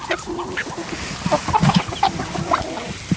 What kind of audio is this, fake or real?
real